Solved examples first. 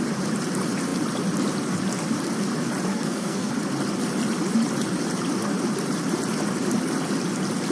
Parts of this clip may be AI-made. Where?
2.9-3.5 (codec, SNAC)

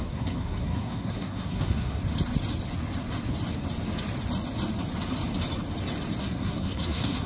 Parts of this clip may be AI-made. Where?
0.0-2.0 (codec, SNAC); 6.2-7.3

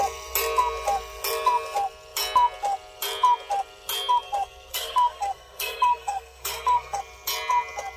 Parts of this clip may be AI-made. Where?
4.7-7.0 (codec, SNAC)

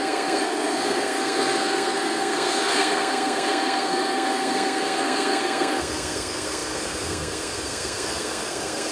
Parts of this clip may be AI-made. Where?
0.0-8.9 (codec, SNAC)

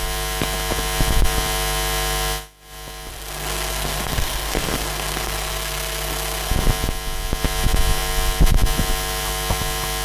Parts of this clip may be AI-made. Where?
3.1-6.5 (codec, SNAC)

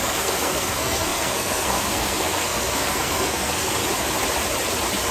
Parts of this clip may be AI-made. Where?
0.0-3.8 (codec, SNAC)